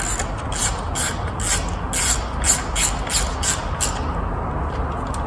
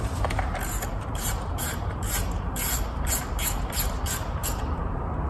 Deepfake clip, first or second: second